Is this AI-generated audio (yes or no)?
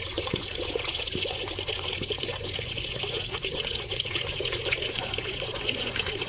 yes